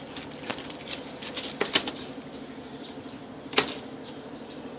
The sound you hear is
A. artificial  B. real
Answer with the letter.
B